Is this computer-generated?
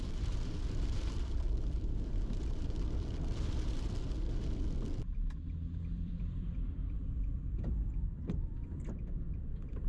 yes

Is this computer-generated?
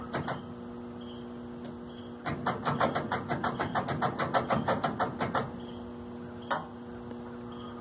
no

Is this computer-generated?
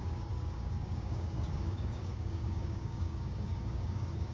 yes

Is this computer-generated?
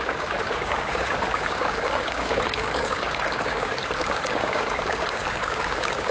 yes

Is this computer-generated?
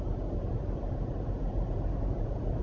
yes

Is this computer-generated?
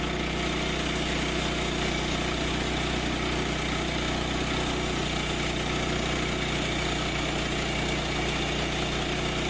no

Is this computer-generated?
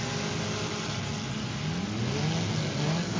no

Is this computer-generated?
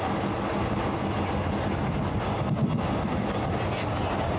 no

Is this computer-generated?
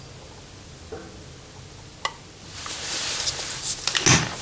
no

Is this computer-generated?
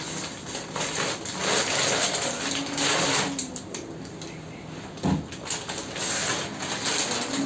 no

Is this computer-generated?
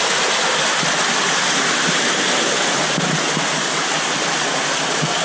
no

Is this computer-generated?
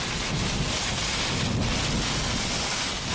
no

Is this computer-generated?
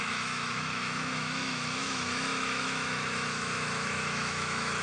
yes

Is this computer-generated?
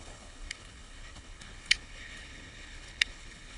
yes